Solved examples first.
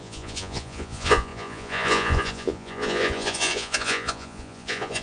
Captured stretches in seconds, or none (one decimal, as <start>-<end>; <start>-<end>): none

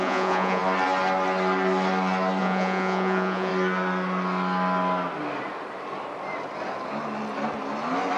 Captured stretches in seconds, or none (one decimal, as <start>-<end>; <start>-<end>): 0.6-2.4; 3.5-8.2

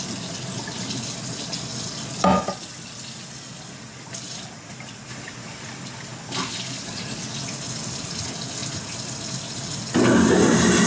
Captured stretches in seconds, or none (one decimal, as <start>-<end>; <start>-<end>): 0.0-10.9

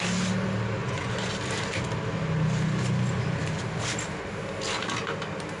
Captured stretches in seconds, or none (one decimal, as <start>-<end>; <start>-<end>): 0.0-0.8; 1.3-5.6

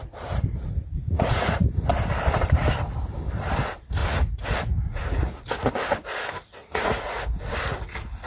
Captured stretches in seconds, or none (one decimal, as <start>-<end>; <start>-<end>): 1.9-4.0; 5.4-6.6; 7.2-8.3

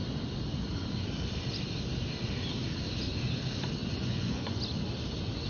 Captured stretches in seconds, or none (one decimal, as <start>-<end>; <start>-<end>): 0.0-3.8; 4.6-5.5

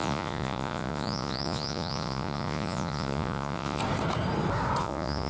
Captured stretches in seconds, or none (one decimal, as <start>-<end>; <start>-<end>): 3.8-4.8